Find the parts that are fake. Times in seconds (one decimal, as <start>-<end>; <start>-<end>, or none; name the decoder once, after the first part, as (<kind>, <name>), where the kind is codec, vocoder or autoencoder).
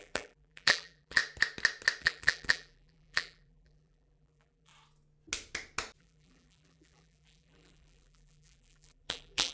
0.0-1.2 (vocoder, BigVGAN v2); 2.0-4.7; 6.0-9.5